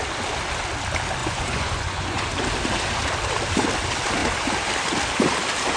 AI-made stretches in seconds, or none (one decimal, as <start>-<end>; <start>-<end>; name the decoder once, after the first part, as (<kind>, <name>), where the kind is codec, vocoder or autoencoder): 1.2-2.3 (vocoder, Vocos)